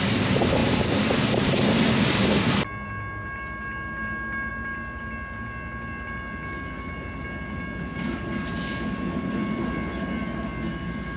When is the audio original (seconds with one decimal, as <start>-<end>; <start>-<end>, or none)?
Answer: 0.0-11.2